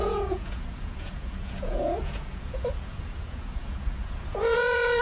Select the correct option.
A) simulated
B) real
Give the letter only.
A